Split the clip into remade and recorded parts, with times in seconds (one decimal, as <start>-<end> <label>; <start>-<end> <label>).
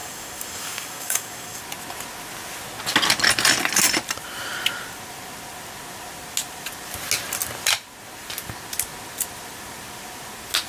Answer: 0.0-1.6 remade; 1.6-10.7 recorded